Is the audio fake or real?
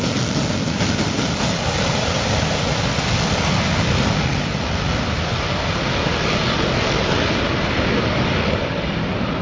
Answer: real